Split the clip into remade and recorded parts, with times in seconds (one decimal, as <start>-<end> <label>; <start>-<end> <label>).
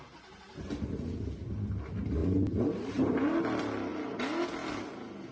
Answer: 0.0-2.2 recorded; 2.2-3.1 remade; 3.1-5.3 recorded